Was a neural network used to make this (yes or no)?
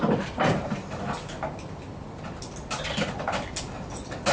no